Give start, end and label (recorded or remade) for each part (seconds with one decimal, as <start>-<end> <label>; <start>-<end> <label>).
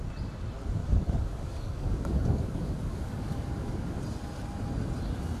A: 0.0-0.8 recorded; 0.8-4.0 remade; 4.0-5.4 recorded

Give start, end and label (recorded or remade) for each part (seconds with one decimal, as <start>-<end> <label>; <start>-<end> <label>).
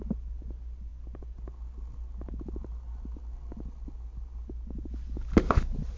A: 0.0-6.0 recorded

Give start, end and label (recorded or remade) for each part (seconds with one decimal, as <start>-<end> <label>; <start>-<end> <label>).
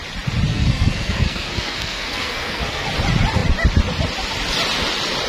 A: 0.0-0.5 recorded; 0.5-2.9 remade; 2.9-5.3 recorded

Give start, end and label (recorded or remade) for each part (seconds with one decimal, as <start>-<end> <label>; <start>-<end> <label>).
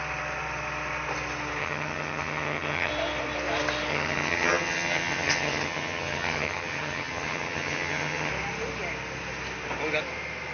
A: 0.0-1.6 recorded; 1.6-2.9 remade; 2.9-3.9 recorded; 3.9-8.3 remade; 8.3-10.5 recorded